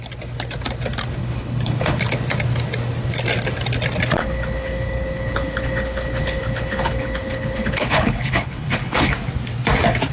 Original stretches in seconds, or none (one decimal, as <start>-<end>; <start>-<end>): 0.0-1.2; 2.0-4.2; 9.1-10.1